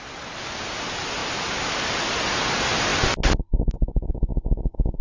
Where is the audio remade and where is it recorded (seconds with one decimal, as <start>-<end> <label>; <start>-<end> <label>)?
0.0-5.0 recorded